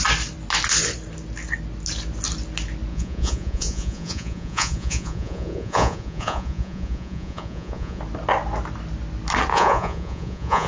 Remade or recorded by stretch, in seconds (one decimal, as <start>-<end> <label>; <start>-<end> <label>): 0.0-2.9 recorded; 2.9-8.0 remade; 8.0-9.5 recorded; 9.5-10.7 remade